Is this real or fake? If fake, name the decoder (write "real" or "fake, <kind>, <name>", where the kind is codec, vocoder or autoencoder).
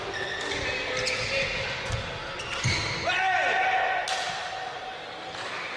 real